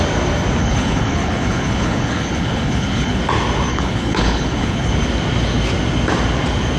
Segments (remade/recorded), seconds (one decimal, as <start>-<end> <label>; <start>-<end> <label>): 0.0-0.6 recorded; 0.6-3.2 remade; 3.2-3.7 recorded; 3.7-4.9 remade; 4.9-6.8 recorded

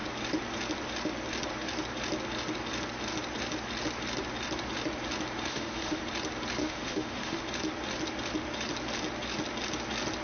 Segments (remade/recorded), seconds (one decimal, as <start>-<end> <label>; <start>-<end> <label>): 0.0-5.5 recorded; 5.5-6.0 remade; 6.0-6.6 recorded; 6.6-7.4 remade; 7.4-10.2 recorded

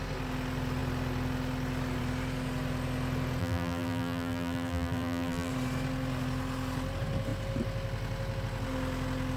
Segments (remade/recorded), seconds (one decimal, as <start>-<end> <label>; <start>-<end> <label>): 0.0-3.4 recorded; 3.4-5.5 remade; 5.5-9.4 recorded

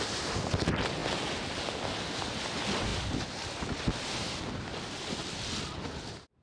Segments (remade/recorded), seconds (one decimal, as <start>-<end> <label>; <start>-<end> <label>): 0.0-6.4 recorded

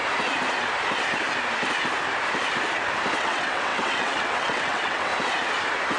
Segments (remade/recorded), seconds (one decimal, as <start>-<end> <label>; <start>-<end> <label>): 0.0-3.2 recorded; 3.2-5.1 remade; 5.1-6.0 recorded

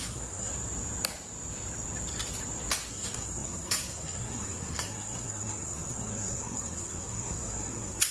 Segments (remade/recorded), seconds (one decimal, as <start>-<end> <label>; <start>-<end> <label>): 0.0-0.5 remade; 0.5-2.9 recorded; 2.9-8.1 remade